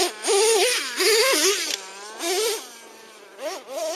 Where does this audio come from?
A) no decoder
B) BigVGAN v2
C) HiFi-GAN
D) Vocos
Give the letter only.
A